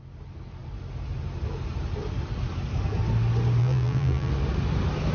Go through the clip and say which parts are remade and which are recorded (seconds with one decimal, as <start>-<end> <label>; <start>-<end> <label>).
0.0-3.6 recorded; 3.6-4.3 remade; 4.3-5.1 recorded